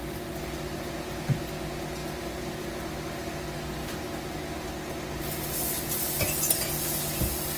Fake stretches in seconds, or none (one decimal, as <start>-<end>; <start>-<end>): none